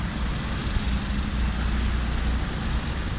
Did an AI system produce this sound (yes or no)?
no